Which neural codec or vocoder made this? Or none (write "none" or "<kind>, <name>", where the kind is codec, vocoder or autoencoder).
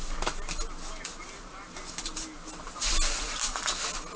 none